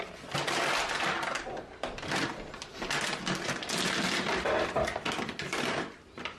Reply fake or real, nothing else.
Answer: real